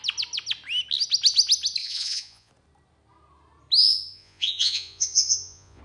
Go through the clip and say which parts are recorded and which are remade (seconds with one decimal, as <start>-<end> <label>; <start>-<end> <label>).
0.0-1.8 recorded; 1.8-2.5 remade; 2.5-3.8 recorded; 3.8-5.8 remade